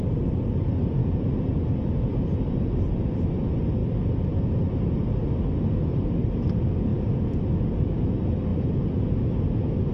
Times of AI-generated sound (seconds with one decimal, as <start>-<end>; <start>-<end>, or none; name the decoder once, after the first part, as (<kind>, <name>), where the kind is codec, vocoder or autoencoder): 1.0-2.1 (vocoder, Vocos); 6.9-7.4; 8.5-9.1